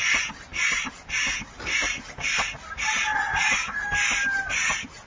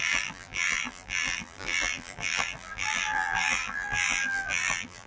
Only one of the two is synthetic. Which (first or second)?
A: second